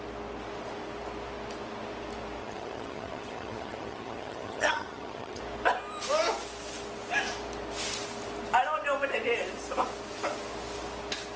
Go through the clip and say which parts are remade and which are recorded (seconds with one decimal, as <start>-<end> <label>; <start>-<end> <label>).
0.0-2.4 recorded; 2.4-5.4 remade; 5.4-11.4 recorded